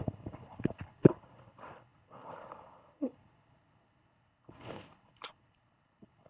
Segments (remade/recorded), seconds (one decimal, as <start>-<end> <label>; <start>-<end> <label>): 0.0-6.3 remade